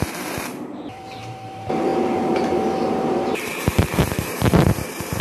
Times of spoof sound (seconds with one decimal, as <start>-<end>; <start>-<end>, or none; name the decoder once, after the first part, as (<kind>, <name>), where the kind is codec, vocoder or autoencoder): 0.0-5.2 (vocoder, BigVGAN v2)

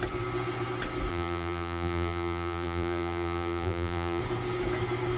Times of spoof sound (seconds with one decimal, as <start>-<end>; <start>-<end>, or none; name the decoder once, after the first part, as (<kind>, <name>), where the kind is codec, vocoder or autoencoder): 1.1-4.2 (vocoder, BigVGAN v2)

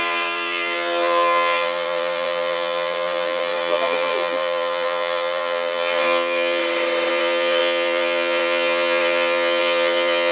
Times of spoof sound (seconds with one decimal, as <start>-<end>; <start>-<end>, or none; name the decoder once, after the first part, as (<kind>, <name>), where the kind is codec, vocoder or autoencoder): 0.0-6.6 (vocoder, BigVGAN v2); 7.1-10.3

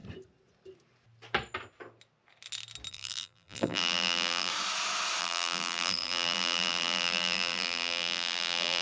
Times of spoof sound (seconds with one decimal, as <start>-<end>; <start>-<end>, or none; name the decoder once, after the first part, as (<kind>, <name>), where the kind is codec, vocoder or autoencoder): 2.9-4.5 (vocoder, BigVGAN v2); 5.2-8.8

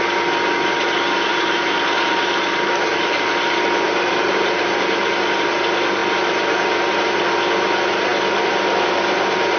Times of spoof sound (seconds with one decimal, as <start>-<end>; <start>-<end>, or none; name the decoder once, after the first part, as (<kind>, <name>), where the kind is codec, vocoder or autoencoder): 1.3-5.1 (vocoder, BigVGAN v2)